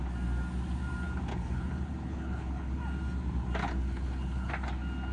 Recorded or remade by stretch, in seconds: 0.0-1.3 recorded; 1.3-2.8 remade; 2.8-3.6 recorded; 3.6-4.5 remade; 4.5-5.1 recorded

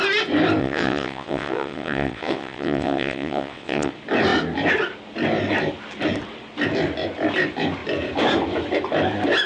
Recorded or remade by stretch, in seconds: 0.0-0.6 recorded; 0.6-3.9 remade; 3.9-9.5 recorded